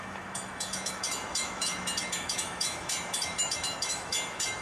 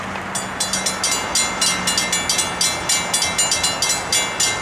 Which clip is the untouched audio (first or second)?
second